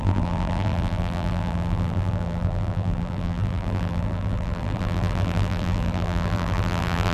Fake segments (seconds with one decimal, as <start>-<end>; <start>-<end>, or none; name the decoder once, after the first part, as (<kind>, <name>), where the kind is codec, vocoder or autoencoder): 0.0-7.1 (vocoder, BigVGAN v2)